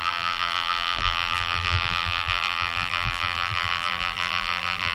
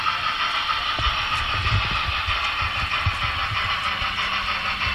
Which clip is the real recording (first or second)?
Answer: second